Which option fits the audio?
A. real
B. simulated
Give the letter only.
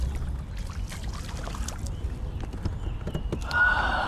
A